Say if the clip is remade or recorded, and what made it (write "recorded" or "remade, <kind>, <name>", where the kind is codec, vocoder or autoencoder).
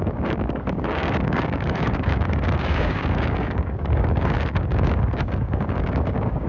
remade, codec, DAC